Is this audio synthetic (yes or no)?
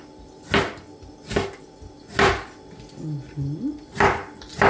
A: no